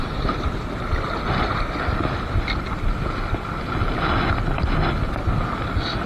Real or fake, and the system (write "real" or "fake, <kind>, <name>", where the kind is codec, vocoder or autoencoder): real